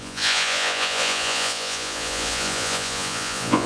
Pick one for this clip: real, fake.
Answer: fake